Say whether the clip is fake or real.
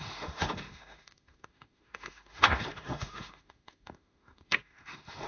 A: fake